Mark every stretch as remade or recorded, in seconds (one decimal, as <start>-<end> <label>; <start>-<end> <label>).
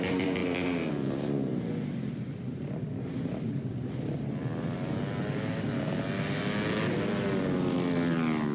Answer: 0.0-8.5 recorded